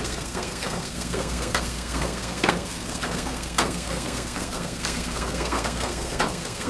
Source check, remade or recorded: remade